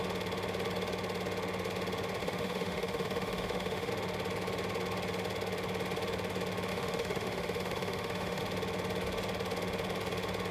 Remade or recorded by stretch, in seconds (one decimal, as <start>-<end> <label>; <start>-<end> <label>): 0.0-2.2 recorded; 2.2-3.9 remade; 3.9-6.7 recorded; 6.7-8.4 remade; 8.4-10.5 recorded